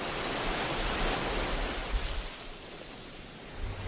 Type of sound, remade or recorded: recorded